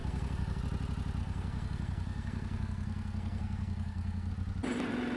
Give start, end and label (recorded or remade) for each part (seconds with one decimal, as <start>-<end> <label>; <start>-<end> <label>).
0.0-0.6 remade; 0.6-1.2 recorded; 1.2-4.3 remade; 4.3-5.2 recorded